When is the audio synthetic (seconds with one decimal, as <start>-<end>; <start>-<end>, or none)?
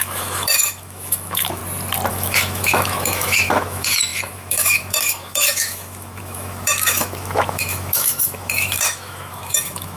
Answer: 0.0-1.6; 2.1-10.0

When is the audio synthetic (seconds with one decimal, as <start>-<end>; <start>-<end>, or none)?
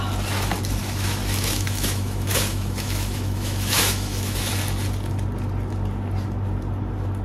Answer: 0.8-4.5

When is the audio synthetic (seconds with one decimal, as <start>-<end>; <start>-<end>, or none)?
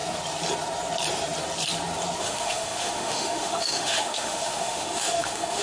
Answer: 2.2-5.6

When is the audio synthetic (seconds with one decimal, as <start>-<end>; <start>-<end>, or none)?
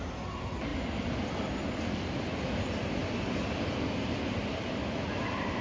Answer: none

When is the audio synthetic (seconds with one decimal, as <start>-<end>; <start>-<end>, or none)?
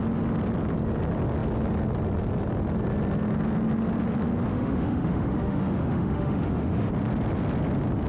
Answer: 4.5-6.9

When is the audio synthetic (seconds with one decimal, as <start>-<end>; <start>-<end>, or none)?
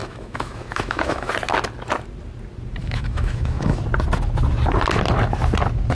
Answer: 0.0-1.3; 2.8-3.8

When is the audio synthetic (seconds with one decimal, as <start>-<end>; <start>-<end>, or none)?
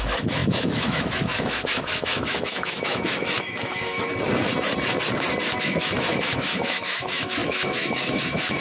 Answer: 0.0-4.1; 5.6-8.6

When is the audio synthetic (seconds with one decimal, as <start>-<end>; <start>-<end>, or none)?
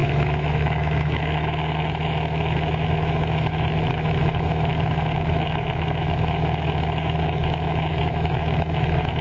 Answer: 0.0-9.2